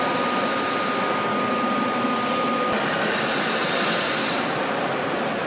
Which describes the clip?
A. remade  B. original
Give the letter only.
B